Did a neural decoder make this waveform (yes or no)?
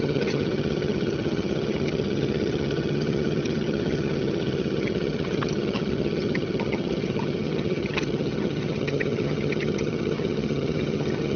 yes